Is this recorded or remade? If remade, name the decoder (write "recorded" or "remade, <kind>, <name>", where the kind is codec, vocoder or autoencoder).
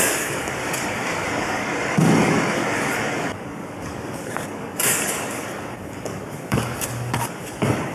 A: remade, codec, DAC